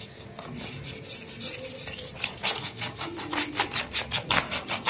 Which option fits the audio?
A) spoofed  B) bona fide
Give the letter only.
B